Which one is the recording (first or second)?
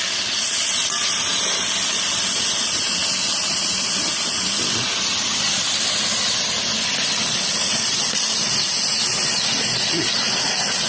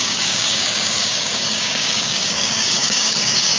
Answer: first